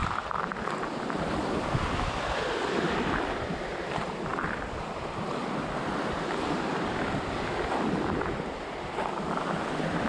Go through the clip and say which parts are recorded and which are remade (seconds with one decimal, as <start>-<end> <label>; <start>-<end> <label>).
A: 0.0-1.0 recorded; 1.0-10.1 remade